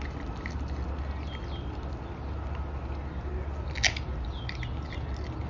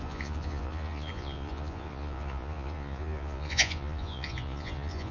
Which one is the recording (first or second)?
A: first